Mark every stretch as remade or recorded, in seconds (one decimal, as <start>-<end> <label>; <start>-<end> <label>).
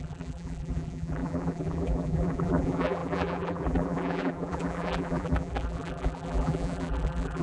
0.0-7.4 remade